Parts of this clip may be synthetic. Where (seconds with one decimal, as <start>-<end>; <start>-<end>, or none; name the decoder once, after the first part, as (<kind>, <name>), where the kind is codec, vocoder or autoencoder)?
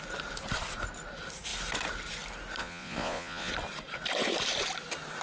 2.6-3.5 (vocoder, Vocos)